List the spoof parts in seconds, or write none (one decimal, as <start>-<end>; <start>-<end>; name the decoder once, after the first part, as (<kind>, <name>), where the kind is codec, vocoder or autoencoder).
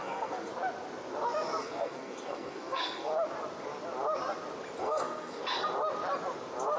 0.0-0.5 (codec, SNAC); 1.6-3.1; 4.8-5.4